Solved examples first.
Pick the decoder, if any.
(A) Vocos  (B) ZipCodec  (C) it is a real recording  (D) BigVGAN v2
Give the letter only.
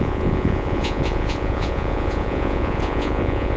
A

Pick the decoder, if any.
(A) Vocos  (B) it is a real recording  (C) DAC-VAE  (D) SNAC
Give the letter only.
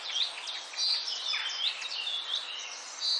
B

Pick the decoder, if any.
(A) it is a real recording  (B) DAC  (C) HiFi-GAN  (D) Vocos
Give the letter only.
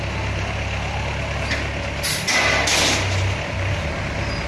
A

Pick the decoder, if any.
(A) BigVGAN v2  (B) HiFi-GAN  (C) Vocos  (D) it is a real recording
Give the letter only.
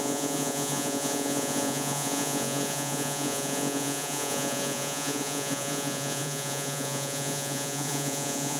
C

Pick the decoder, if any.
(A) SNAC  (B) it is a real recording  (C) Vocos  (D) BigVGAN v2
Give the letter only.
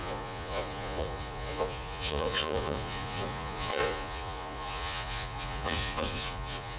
C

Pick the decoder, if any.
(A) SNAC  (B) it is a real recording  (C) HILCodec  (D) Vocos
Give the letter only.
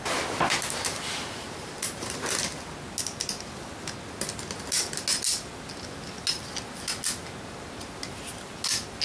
B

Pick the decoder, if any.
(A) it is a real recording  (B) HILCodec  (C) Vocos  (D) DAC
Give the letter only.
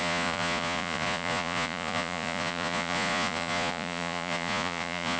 C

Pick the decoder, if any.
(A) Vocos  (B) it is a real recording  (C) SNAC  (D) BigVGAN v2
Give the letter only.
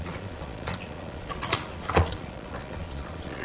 A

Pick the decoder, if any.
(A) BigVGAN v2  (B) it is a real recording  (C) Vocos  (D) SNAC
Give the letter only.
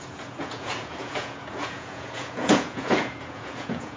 C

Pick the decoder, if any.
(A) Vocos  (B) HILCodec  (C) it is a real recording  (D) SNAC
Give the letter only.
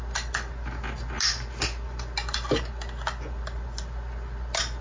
C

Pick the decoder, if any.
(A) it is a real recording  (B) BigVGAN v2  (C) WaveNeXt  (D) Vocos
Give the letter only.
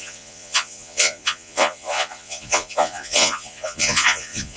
D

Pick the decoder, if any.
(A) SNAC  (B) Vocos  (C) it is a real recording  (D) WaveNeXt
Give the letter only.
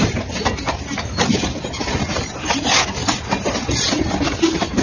C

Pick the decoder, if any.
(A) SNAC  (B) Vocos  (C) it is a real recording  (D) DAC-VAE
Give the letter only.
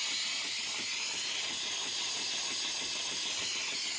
C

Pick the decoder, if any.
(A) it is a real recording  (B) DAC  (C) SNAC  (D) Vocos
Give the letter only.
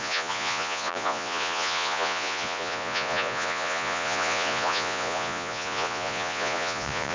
D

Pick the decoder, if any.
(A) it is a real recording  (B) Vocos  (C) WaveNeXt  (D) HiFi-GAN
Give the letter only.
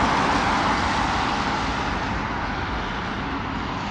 A